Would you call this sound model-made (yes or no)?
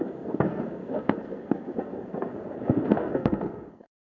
yes